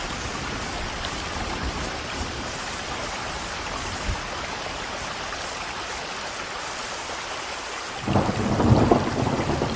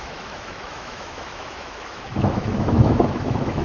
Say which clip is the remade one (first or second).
second